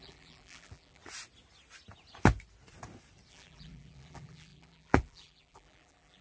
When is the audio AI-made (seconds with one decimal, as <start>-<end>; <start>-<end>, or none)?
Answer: 0.0-1.0; 3.3-6.2